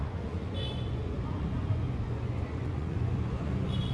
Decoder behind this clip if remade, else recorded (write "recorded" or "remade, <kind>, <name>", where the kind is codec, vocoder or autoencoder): remade, vocoder, Vocos